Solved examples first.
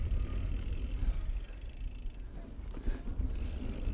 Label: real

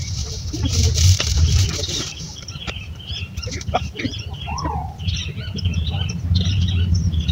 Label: fake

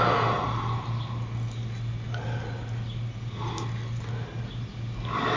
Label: real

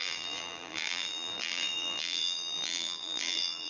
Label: fake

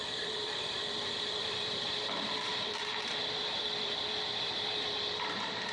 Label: fake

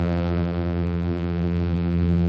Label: fake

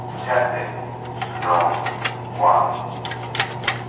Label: real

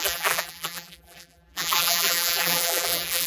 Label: fake